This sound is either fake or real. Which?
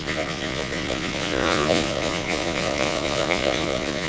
fake